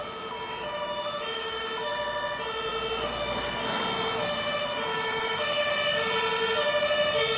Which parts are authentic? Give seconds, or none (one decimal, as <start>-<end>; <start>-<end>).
0.0-0.5; 1.9-4.9; 5.7-7.4